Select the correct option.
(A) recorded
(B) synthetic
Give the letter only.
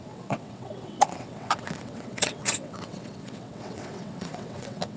B